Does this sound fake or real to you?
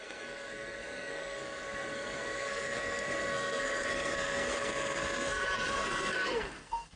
fake